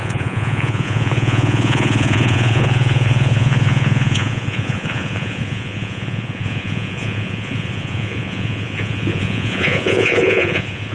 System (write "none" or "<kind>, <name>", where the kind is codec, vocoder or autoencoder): vocoder, Vocos